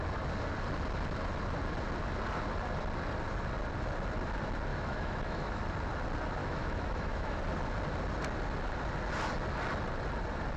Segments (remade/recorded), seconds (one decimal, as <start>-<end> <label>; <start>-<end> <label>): 0.0-4.7 recorded; 4.7-5.6 remade; 5.6-6.4 recorded; 6.4-7.4 remade; 7.4-10.6 recorded